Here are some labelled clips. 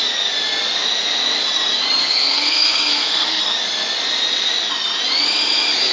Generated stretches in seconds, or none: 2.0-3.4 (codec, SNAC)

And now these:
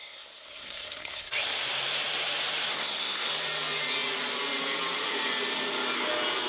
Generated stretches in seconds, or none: 0.0-1.3 (codec, SNAC); 2.7-3.3

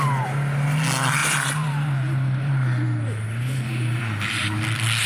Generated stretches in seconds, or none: none

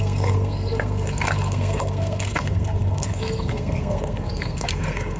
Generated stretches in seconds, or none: 0.0-5.2 (codec, SNAC)

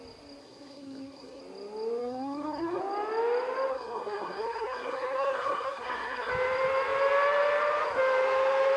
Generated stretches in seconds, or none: 0.4-1.4 (codec, SNAC); 2.0-2.8; 3.7-6.3